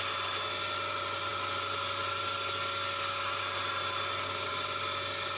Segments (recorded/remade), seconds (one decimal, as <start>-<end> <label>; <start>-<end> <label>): 0.0-5.4 recorded